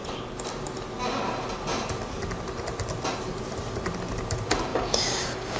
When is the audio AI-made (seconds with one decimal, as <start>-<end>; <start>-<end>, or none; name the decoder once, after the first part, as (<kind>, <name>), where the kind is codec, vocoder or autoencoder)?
4.7-5.6 (codec, DAC)